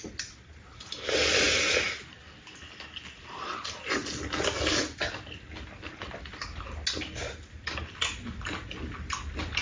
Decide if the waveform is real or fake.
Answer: real